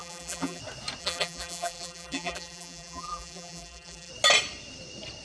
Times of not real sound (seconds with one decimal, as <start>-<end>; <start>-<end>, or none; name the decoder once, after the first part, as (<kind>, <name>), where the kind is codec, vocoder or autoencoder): 0.0-0.6 (vocoder, BigVGAN v2); 1.0-4.1